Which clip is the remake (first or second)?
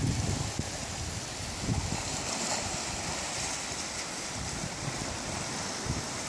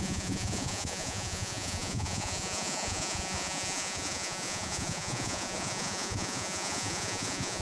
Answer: second